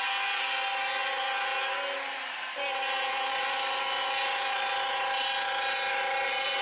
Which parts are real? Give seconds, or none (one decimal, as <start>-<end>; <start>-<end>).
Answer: 0.0-3.3